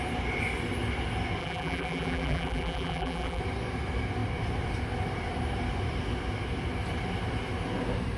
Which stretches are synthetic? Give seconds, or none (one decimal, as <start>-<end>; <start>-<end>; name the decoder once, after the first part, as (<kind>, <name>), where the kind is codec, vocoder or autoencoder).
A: 1.4-3.4 (vocoder, BigVGAN v2)